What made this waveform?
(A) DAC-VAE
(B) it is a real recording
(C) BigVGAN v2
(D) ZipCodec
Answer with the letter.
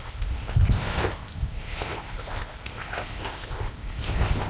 D